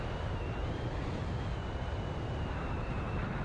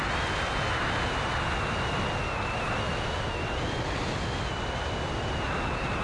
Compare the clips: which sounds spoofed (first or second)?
first